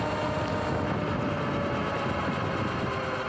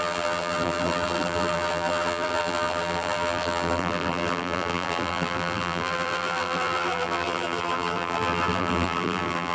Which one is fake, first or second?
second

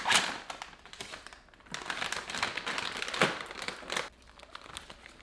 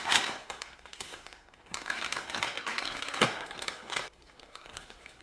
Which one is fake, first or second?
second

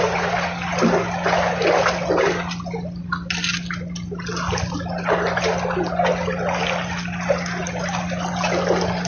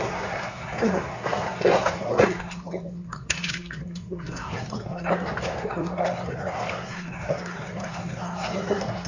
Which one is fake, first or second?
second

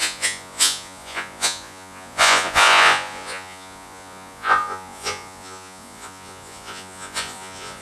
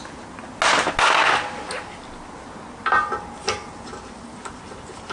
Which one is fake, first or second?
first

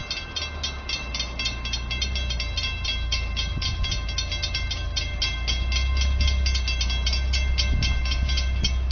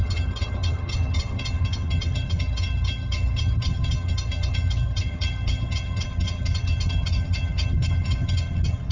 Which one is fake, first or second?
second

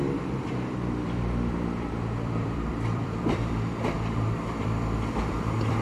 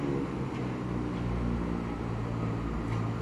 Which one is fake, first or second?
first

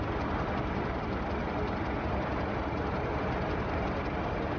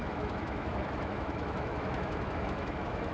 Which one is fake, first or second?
second